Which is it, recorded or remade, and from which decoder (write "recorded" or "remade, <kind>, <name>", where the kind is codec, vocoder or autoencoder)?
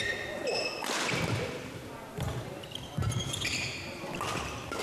recorded